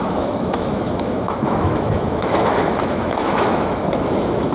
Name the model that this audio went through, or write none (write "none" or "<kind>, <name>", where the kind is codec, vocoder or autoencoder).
autoencoder, DAC-VAE